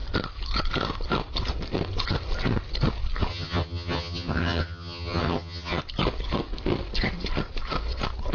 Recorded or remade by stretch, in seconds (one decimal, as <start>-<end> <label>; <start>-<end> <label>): 0.0-3.3 recorded; 3.3-5.8 remade; 5.8-8.3 recorded